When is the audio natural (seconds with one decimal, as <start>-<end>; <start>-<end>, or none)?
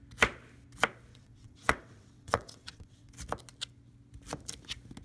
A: 0.0-1.1; 3.1-5.0